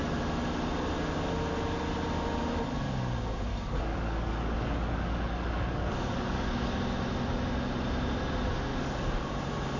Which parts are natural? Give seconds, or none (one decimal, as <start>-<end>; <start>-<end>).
0.0-3.5; 6.7-8.7; 9.3-9.8